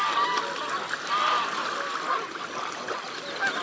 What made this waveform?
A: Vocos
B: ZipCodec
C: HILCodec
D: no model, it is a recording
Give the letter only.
D